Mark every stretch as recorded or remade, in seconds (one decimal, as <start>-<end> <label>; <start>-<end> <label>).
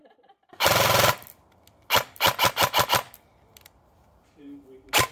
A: 0.0-0.7 remade; 0.7-5.1 recorded